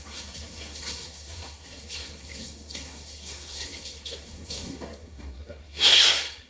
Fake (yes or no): yes